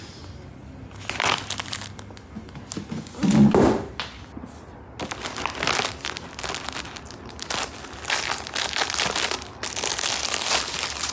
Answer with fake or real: real